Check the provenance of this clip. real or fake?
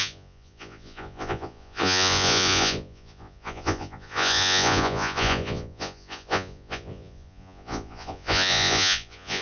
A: fake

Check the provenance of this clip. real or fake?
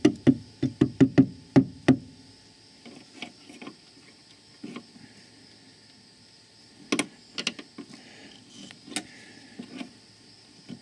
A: real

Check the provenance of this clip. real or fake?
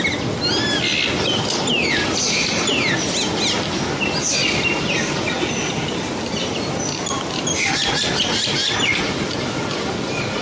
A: real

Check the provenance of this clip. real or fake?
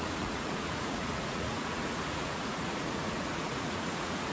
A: fake